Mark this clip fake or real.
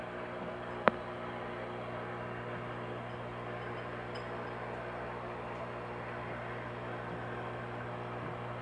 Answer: real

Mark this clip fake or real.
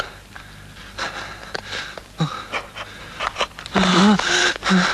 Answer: real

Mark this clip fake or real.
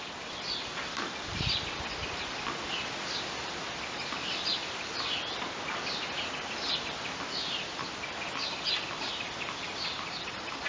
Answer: real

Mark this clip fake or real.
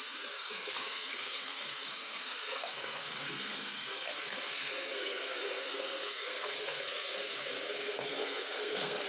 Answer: fake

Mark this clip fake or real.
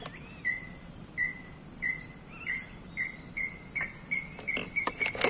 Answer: real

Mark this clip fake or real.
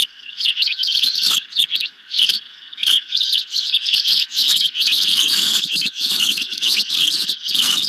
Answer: fake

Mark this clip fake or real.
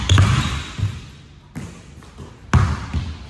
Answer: real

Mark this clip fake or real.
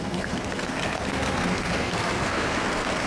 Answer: fake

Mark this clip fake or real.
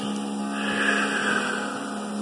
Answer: real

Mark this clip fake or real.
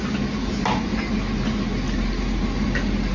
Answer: real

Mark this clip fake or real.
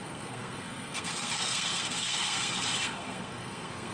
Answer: fake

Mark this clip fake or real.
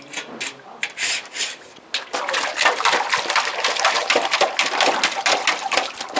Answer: real